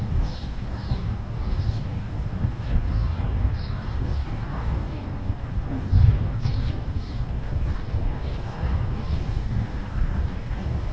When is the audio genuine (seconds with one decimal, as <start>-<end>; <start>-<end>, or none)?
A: none